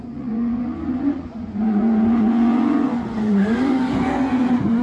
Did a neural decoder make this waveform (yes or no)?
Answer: yes